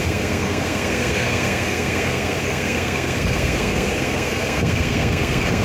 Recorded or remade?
remade